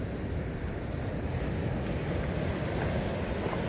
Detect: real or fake fake